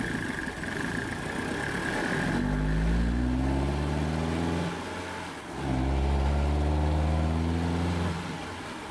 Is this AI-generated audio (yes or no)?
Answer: no